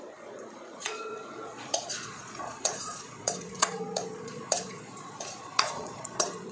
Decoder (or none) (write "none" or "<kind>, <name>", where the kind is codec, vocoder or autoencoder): vocoder, Vocos